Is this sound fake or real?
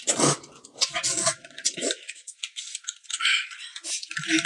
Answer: real